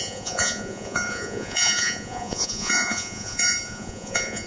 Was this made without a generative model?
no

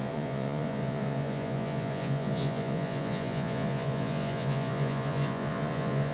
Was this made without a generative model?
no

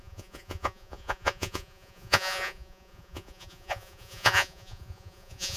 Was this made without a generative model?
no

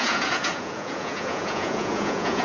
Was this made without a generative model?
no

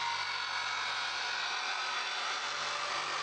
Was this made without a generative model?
yes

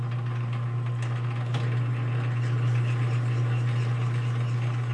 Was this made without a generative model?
yes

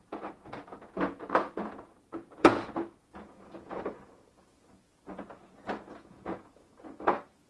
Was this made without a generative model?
no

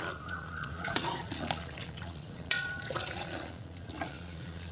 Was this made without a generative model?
no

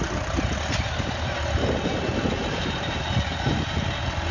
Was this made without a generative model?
yes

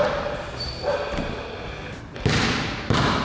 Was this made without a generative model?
yes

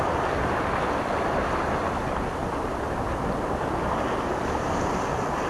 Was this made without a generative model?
yes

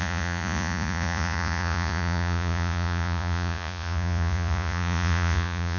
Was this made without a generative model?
no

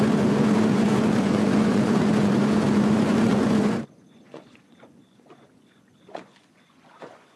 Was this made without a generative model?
no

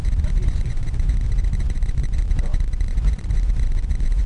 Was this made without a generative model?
no